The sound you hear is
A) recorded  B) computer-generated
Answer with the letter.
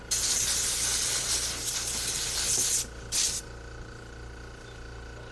A